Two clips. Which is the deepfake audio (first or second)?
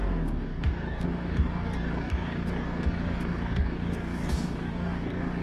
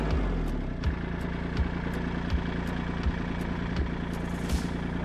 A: first